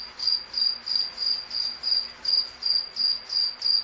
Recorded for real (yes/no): yes